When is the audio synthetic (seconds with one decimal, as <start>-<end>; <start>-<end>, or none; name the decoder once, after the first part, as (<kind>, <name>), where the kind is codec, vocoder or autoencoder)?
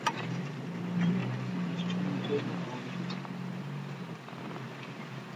0.0-5.4 (vocoder, BigVGAN v2)